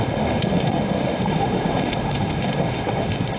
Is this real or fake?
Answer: fake